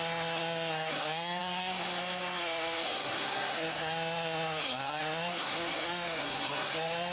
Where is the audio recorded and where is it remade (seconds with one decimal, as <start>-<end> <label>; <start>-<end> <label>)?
0.0-7.1 remade